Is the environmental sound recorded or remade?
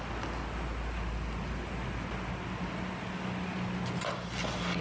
recorded